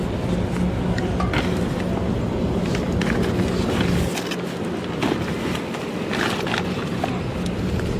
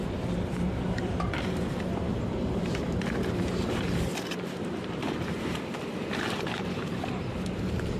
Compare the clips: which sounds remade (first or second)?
second